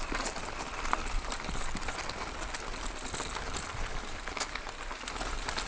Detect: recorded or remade recorded